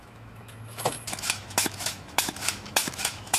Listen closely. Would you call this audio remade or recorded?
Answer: remade